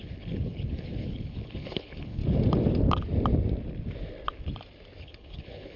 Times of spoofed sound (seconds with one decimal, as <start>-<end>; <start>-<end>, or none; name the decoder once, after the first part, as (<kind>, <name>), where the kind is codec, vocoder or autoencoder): 0.0-2.2 (codec, HILCodec); 5.0-5.8